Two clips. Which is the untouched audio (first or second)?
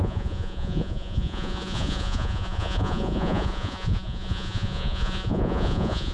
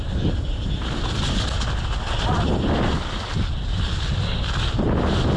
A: second